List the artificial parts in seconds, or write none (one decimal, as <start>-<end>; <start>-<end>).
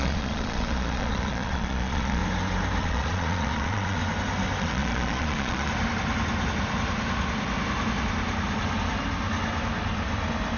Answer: 0.0-2.2; 2.8-4.0; 4.6-5.7